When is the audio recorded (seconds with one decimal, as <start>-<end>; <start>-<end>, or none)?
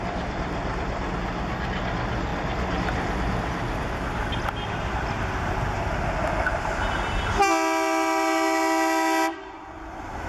0.0-10.3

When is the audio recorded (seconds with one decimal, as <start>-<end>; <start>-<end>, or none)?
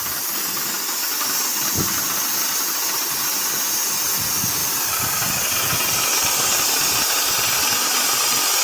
0.0-4.6; 7.0-8.6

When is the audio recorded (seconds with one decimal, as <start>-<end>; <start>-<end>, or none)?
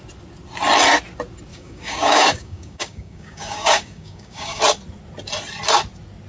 0.0-1.5; 4.6-6.3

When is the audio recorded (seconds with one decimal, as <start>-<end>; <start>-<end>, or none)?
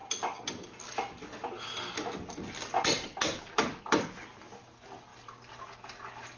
0.0-6.4